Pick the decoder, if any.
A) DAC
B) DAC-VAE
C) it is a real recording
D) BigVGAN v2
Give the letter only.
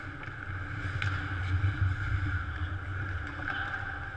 C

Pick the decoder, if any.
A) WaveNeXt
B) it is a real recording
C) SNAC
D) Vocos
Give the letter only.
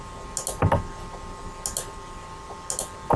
B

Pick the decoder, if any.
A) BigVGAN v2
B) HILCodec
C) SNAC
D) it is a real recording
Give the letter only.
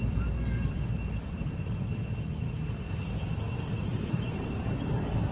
A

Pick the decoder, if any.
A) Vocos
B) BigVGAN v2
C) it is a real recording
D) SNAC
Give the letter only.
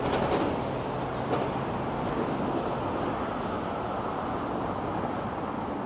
C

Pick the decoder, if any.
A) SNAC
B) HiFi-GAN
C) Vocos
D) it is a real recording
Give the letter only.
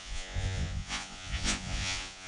C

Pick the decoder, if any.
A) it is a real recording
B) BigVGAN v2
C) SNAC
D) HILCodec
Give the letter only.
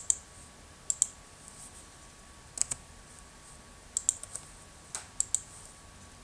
A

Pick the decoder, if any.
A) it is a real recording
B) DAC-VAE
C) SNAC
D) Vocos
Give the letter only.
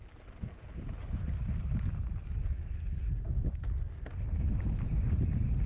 A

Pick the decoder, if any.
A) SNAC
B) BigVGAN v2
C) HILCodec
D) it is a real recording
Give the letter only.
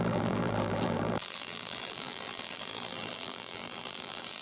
B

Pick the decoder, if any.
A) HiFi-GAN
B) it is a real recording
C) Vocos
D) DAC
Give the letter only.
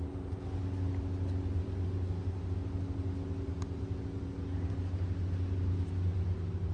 B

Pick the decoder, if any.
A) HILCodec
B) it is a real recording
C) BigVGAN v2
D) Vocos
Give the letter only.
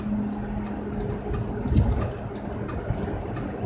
B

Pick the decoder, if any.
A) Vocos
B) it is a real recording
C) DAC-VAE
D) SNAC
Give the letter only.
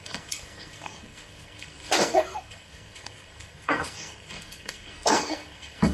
D